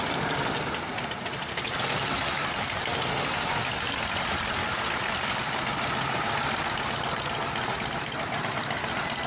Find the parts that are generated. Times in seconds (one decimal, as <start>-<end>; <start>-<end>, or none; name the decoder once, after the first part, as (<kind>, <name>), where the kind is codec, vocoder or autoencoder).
none